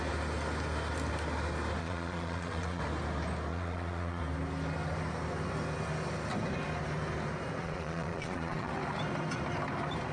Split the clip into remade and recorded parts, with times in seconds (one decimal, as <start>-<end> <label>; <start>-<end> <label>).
0.0-1.8 recorded; 1.8-2.8 remade; 2.8-3.5 recorded; 3.5-4.2 remade; 4.2-7.6 recorded; 7.6-8.7 remade; 8.7-10.1 recorded